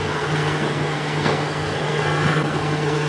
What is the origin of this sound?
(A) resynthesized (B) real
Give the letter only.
A